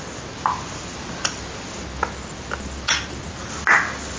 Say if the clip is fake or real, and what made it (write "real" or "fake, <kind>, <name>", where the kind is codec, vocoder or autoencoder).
real